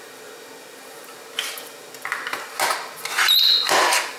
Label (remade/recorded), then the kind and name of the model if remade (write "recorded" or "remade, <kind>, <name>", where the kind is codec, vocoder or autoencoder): recorded